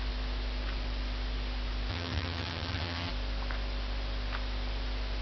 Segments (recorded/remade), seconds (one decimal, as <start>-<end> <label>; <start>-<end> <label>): 0.0-1.9 recorded; 1.9-3.1 remade; 3.1-5.2 recorded